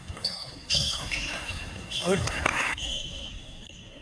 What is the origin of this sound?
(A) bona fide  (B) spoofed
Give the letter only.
B